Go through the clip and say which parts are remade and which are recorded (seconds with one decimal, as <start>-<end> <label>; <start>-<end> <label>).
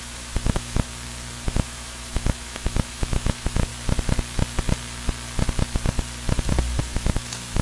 0.0-0.9 remade; 0.9-1.5 recorded; 1.5-3.7 remade; 3.7-6.8 recorded; 6.8-7.6 remade